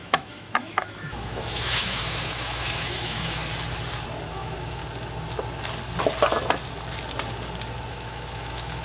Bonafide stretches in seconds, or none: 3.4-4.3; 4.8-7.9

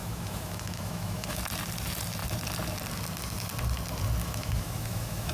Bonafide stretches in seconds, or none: 1.4-4.2

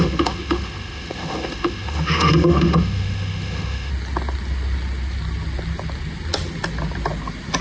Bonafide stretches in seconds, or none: 3.9-7.6

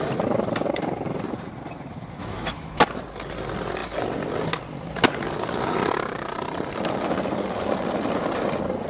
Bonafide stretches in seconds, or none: 0.0-2.2; 2.8-8.9

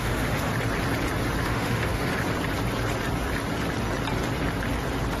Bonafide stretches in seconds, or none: 0.5-1.4; 2.1-5.2

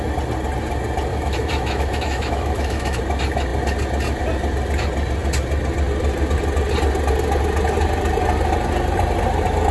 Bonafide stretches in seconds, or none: 0.0-1.1; 3.0-9.7

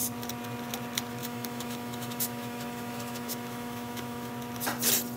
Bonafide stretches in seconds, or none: 0.0-1.2; 4.3-5.2